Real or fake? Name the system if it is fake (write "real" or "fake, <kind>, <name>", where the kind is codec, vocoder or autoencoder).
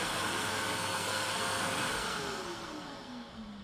fake, codec, SNAC